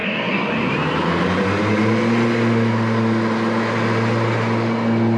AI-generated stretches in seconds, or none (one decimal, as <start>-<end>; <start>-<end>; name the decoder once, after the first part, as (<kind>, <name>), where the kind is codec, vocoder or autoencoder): 0.0-0.5 (codec, SNAC)